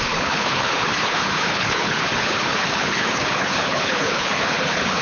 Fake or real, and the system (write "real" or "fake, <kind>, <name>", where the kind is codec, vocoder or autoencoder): fake, codec, HILCodec